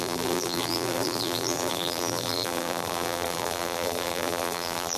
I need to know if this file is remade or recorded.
remade